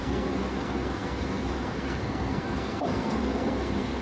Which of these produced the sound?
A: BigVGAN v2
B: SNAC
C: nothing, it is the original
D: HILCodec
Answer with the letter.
B